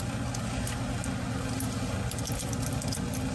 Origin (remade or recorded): recorded